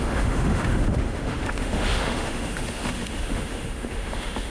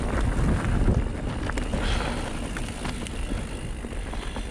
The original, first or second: second